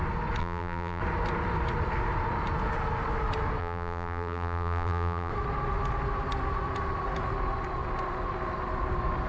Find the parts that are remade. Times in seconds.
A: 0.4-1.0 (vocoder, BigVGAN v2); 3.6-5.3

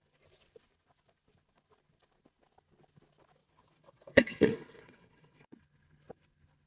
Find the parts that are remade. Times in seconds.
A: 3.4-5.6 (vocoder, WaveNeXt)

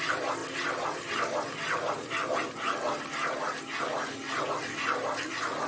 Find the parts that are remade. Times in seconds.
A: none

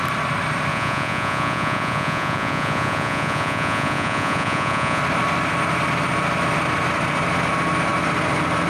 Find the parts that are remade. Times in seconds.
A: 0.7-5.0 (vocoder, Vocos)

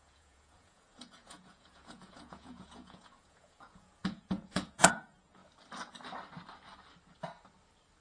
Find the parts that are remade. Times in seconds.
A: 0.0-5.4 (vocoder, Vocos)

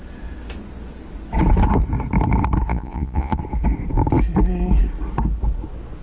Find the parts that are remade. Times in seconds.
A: 2.7-3.4 (vocoder, Vocos)